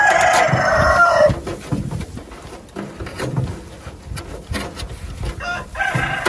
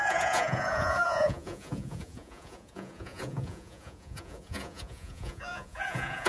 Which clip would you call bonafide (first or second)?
first